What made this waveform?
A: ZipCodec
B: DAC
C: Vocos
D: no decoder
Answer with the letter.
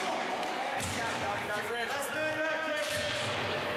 B